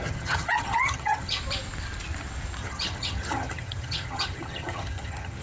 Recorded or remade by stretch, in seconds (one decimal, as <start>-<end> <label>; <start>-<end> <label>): 0.0-1.4 remade; 1.4-2.6 recorded; 2.6-5.4 remade